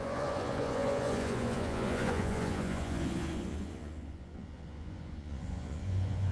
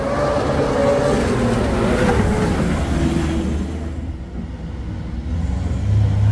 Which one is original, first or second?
second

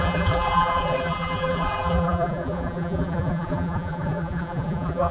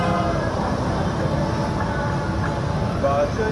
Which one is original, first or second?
second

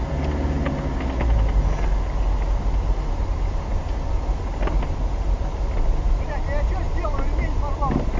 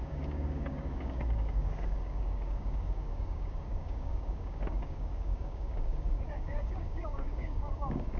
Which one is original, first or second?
first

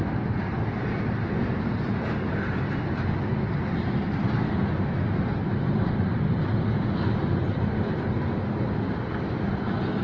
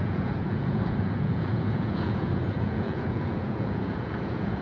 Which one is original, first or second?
first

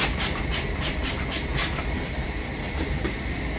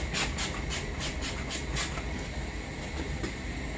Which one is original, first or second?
second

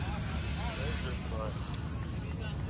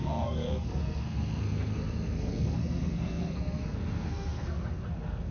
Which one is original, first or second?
first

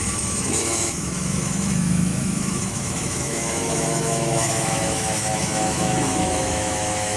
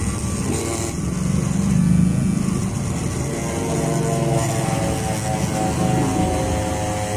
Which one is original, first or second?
second